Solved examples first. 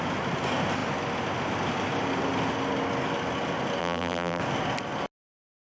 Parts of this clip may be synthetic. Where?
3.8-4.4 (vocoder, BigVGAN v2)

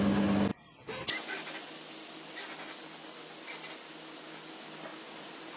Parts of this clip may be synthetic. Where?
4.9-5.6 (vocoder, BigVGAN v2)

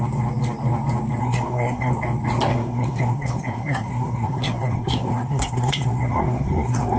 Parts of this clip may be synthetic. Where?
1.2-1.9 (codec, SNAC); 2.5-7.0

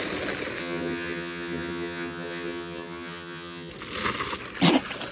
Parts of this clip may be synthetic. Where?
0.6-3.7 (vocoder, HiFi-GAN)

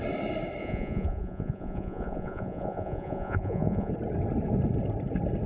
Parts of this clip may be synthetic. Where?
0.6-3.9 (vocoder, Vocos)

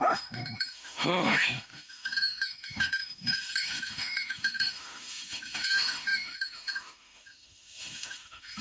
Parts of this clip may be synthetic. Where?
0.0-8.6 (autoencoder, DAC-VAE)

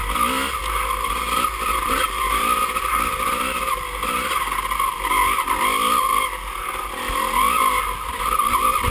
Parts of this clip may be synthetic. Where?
none